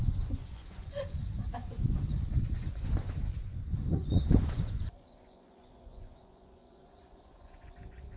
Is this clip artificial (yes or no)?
yes